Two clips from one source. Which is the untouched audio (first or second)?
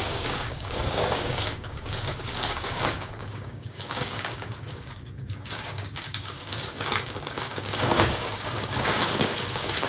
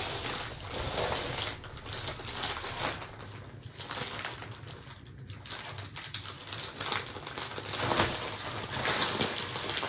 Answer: second